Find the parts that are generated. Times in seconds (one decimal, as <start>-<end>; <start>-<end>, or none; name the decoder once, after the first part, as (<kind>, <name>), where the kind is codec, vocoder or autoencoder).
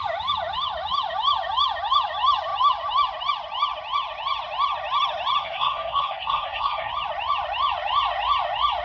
5.4-6.9 (codec, SNAC)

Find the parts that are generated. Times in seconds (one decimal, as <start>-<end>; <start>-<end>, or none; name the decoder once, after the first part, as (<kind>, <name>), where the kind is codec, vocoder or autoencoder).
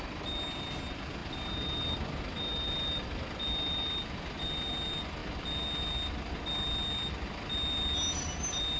none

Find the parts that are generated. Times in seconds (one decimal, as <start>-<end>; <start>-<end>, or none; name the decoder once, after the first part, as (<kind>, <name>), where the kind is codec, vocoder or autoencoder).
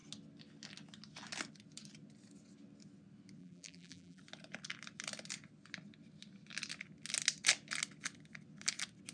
3.4-4.2 (vocoder, BigVGAN v2)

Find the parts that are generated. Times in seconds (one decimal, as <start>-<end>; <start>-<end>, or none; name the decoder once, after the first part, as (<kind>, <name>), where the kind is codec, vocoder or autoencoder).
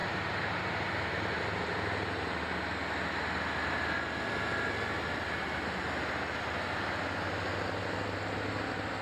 none